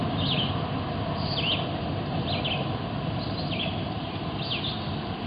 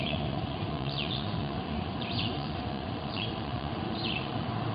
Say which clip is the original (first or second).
first